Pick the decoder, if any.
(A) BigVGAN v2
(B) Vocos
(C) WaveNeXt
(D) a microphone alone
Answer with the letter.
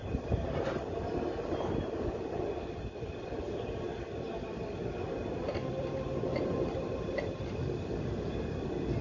A